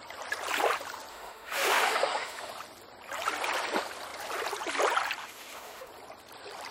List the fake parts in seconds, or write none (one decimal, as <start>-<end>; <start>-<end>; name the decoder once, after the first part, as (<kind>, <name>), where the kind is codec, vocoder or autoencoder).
1.1-2.5 (autoencoder, DAC-VAE); 5.2-5.9

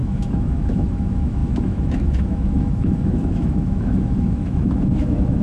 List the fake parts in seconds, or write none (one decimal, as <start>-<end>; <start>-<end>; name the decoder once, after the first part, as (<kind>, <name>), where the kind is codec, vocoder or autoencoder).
0.0-5.4 (autoencoder, DAC-VAE)

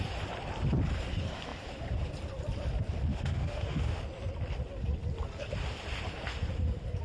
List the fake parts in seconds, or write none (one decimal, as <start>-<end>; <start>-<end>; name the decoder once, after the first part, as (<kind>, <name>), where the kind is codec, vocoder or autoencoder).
3.1-4.0 (autoencoder, DAC-VAE)

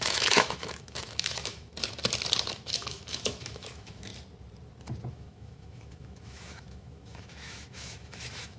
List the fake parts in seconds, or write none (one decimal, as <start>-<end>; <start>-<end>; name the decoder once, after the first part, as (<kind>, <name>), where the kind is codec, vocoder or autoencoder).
0.0-1.7 (autoencoder, DAC-VAE); 2.5-4.1; 5.1-8.6

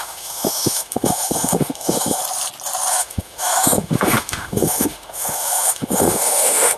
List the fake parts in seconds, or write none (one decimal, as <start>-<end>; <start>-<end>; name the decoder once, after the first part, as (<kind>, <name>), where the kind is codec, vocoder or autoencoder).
0.0-2.2 (autoencoder, DAC-VAE); 2.9-6.8